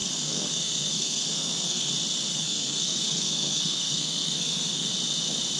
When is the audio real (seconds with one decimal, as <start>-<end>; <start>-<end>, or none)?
1.9-2.3; 4.9-5.6